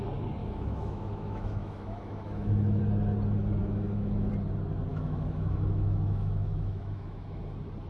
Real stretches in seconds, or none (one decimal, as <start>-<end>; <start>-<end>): 0.0-0.4; 2.8-3.6; 4.3-4.9; 7.4-7.9